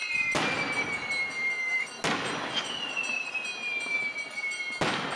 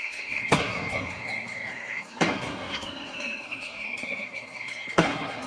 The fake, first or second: second